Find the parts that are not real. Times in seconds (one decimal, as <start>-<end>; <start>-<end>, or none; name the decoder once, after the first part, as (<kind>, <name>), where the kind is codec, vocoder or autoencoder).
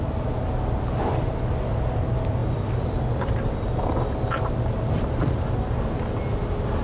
none